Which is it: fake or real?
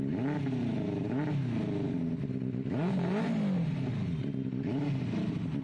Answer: real